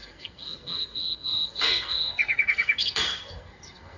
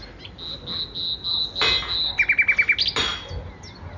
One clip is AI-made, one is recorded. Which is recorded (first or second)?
second